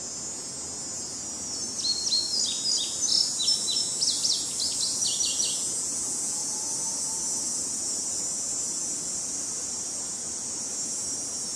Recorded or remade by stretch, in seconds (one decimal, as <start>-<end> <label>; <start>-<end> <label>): 0.0-11.6 recorded